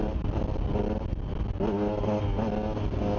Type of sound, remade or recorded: recorded